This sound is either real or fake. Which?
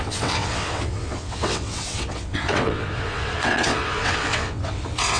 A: fake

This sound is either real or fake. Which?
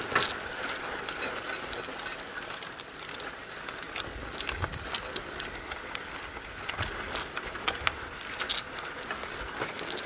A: real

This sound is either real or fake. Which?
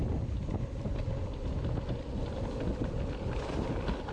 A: real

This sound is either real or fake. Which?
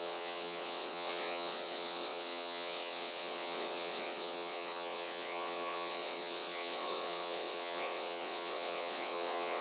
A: fake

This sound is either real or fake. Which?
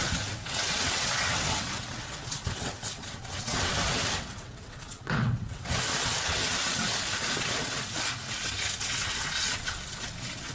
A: fake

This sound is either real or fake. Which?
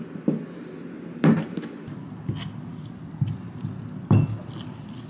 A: real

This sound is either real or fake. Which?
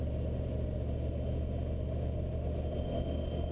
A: real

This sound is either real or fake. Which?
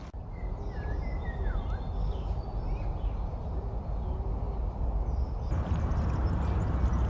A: real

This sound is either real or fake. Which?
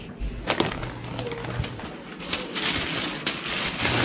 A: real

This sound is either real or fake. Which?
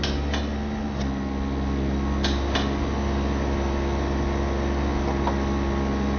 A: real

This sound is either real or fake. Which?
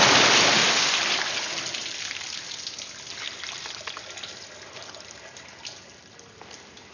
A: real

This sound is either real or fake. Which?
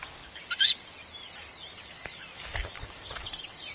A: real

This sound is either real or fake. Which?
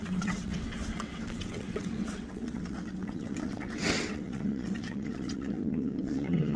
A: fake